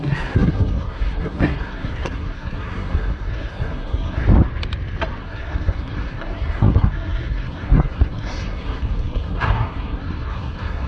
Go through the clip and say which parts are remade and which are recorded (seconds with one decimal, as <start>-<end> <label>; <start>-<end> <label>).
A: 0.0-4.2 remade; 4.2-5.2 recorded; 5.2-10.9 remade